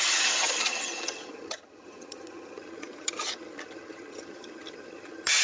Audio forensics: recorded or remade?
remade